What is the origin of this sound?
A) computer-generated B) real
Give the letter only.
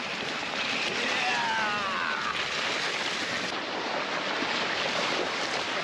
B